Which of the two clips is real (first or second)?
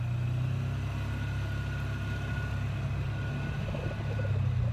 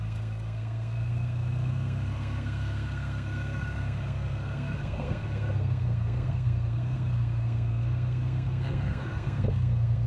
first